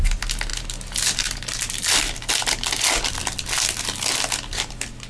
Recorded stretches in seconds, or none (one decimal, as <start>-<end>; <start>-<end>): 0.0-5.1

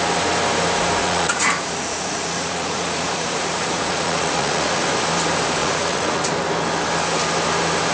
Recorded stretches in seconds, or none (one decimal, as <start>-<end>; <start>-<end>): 0.0-1.0; 4.9-5.6; 6.3-7.9